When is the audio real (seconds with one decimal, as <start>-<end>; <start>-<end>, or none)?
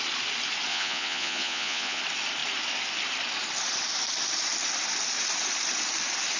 0.0-0.7; 2.0-6.4